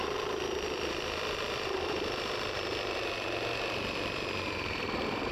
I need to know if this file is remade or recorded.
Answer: remade